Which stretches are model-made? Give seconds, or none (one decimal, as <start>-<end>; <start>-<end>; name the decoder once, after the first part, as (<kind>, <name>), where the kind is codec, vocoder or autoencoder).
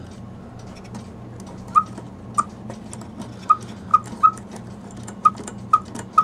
none